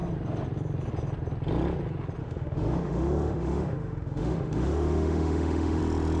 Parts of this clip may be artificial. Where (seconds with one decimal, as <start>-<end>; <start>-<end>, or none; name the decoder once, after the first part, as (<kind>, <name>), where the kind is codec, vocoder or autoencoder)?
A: 2.2-5.8 (autoencoder, DAC-VAE)